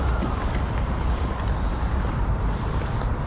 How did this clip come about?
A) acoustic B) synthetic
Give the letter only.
B